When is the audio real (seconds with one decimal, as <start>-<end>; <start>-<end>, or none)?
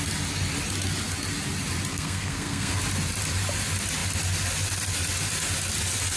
0.0-1.9; 2.8-6.2